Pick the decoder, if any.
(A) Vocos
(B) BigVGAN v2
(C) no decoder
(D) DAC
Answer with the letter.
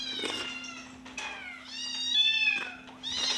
C